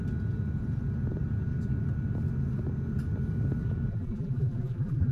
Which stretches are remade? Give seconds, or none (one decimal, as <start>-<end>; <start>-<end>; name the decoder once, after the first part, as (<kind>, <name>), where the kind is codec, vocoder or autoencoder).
3.9-5.1 (vocoder, BigVGAN v2)